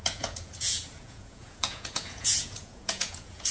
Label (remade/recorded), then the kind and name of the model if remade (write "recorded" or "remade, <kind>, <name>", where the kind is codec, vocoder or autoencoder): remade, vocoder, Vocos